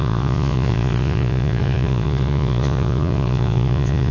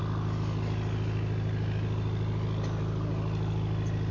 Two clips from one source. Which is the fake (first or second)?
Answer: first